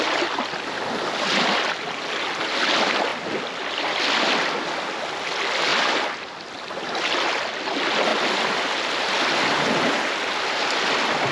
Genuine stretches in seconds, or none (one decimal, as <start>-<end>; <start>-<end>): 0.0-11.3